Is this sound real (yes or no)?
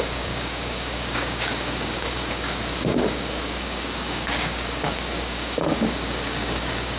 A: no